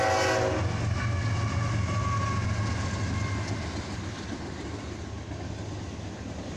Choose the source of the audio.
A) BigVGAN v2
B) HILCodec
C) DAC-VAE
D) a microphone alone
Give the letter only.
D